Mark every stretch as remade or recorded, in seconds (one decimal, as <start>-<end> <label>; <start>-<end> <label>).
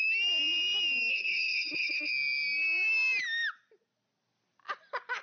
0.0-1.1 recorded; 1.1-2.1 remade; 2.1-5.2 recorded